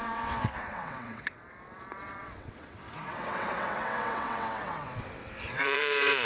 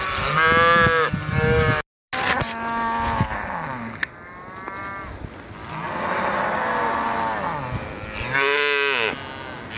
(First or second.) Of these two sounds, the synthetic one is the first